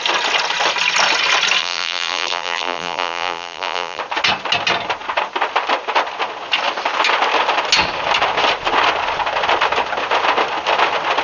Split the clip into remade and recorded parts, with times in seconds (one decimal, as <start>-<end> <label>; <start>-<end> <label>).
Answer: 0.0-1.6 recorded; 1.6-4.0 remade; 4.0-11.2 recorded